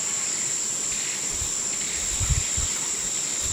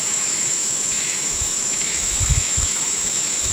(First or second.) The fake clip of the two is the second